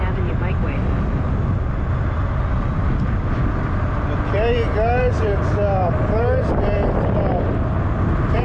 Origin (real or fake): real